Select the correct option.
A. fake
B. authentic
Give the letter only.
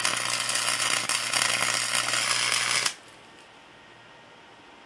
B